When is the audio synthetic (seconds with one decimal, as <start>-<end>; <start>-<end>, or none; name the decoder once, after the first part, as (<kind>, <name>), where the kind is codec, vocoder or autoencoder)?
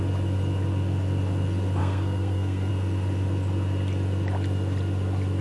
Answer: 1.8-2.7 (codec, SNAC)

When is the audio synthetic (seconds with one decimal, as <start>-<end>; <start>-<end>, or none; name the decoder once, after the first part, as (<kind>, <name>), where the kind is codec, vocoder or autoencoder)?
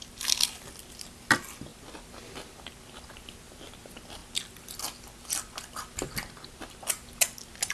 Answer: none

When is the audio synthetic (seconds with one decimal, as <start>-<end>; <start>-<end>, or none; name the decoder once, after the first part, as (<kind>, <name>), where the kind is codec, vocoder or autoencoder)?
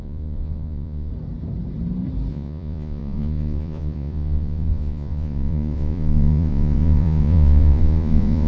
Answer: 0.0-1.1 (vocoder, Vocos); 2.3-8.5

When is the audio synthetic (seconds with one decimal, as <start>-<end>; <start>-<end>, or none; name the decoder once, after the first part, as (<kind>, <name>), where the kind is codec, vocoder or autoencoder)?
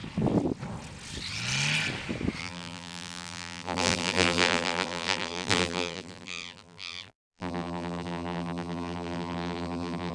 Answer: 2.4-10.1 (vocoder, BigVGAN v2)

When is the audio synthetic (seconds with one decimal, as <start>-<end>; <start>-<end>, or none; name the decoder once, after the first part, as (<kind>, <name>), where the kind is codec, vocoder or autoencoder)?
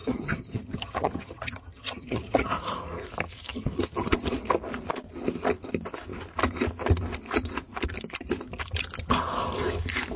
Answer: 0.0-2.5 (vocoder, HiFi-GAN); 3.5-4.5